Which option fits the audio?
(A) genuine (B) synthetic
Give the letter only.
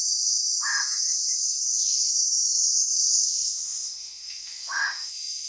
B